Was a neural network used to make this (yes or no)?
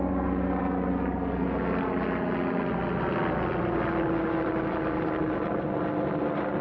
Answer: no